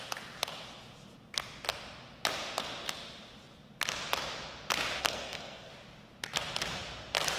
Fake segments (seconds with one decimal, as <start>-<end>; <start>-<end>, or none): 5.0-5.7